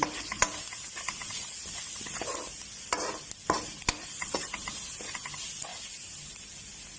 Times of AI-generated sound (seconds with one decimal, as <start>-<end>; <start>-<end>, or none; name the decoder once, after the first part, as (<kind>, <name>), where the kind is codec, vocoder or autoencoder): none